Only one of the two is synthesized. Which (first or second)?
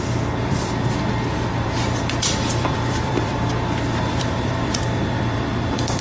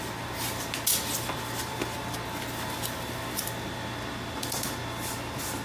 first